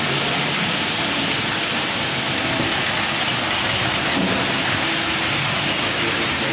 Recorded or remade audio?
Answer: recorded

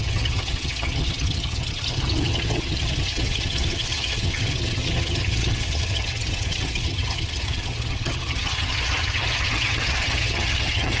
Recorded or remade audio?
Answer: remade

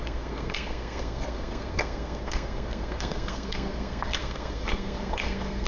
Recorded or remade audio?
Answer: remade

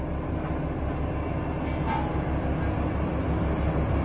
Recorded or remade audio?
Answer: recorded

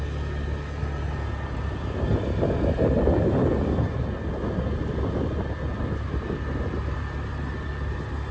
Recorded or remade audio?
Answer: recorded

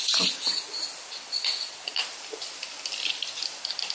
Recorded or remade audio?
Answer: recorded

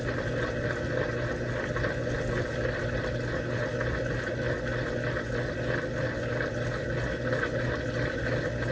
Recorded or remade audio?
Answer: recorded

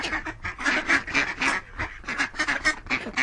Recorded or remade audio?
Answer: recorded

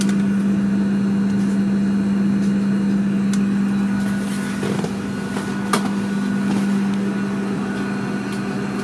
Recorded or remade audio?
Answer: recorded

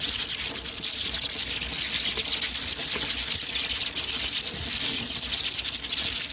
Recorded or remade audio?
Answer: recorded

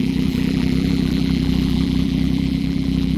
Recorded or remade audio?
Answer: remade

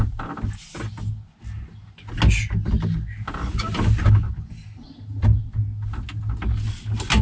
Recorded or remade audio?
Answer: recorded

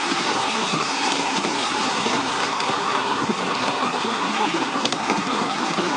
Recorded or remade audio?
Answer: remade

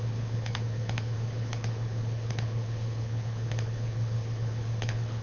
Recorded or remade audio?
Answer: remade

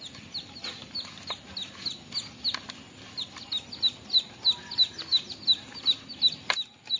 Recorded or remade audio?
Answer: recorded